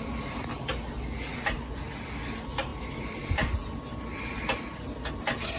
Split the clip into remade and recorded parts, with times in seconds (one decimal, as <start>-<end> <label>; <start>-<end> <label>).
0.0-5.6 recorded